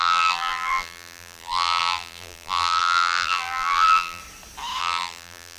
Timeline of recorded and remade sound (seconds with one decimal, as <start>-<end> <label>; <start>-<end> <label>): 0.0-4.2 remade; 4.2-4.8 recorded; 4.8-5.6 remade